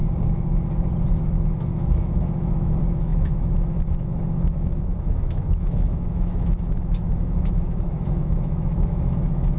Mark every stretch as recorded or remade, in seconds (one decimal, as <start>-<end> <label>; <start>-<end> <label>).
0.0-1.1 recorded; 1.1-9.6 remade